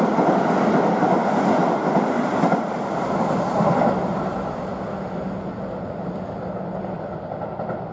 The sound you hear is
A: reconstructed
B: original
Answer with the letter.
B